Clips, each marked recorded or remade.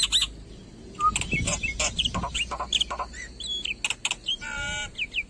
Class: recorded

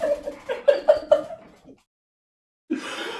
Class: recorded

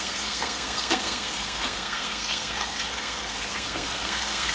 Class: remade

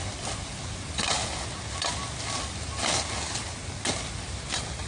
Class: recorded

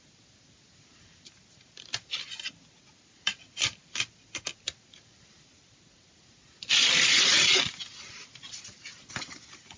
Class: recorded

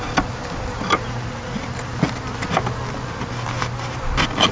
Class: recorded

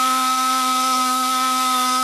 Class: remade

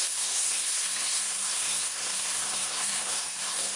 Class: remade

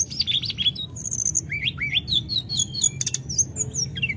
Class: recorded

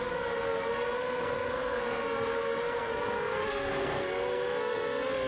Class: remade